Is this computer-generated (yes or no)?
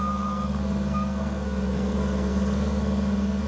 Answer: yes